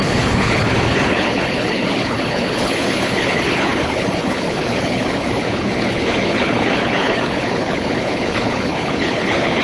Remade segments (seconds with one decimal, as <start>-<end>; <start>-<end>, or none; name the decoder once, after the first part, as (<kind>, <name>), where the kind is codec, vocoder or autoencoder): 0.0-9.6 (codec, HILCodec)